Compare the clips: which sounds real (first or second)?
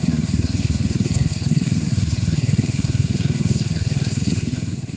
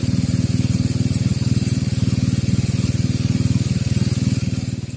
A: second